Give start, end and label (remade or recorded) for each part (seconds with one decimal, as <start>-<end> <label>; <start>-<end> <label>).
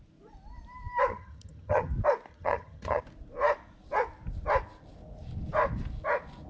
0.0-1.1 recorded; 1.1-1.9 remade; 1.9-2.3 recorded; 2.3-3.0 remade; 3.0-6.5 recorded